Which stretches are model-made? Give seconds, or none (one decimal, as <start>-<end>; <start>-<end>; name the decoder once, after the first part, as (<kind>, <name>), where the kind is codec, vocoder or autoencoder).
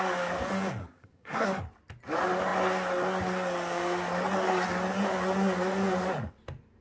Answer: 0.8-1.6 (codec, SNAC)